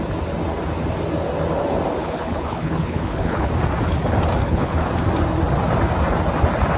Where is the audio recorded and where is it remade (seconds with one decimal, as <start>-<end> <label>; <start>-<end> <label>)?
0.0-2.0 recorded; 2.0-3.5 remade; 3.5-4.4 recorded; 4.4-4.9 remade; 4.9-6.8 recorded